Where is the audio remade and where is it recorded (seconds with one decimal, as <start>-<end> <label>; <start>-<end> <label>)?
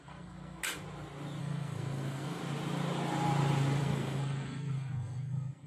0.0-0.6 remade; 0.6-1.4 recorded; 1.4-2.4 remade; 2.4-3.8 recorded; 3.8-5.7 remade